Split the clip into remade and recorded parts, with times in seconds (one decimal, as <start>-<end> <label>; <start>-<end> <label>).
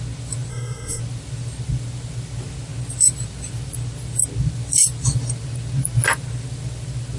0.0-0.5 recorded; 0.5-1.0 remade; 1.0-7.2 recorded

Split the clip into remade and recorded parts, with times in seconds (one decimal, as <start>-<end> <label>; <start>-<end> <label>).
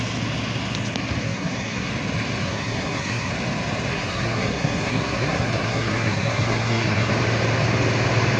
0.0-1.2 recorded; 1.2-1.9 remade; 1.9-2.4 recorded; 2.4-3.3 remade; 3.3-3.9 recorded; 3.9-7.1 remade; 7.1-8.4 recorded